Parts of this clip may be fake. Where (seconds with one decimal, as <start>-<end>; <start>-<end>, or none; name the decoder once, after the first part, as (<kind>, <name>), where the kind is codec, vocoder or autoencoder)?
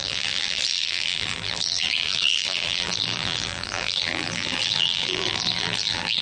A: 0.0-6.2 (vocoder, BigVGAN v2)